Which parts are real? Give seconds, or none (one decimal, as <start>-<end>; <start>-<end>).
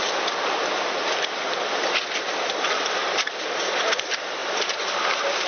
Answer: 0.0-5.5